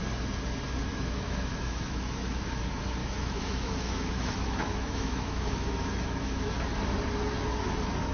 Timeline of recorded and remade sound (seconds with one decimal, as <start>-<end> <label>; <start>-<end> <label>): 0.0-0.9 recorded; 0.9-2.6 remade; 2.6-3.0 recorded; 3.0-6.5 remade; 6.5-8.1 recorded